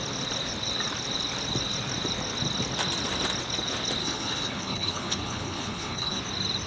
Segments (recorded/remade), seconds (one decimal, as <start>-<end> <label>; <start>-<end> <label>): 0.0-4.0 recorded; 4.0-6.2 remade; 6.2-6.7 recorded